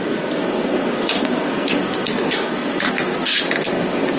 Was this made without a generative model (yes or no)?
no